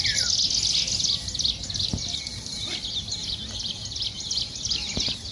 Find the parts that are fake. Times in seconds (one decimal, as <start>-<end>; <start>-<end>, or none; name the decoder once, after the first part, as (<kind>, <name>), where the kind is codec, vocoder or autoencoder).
none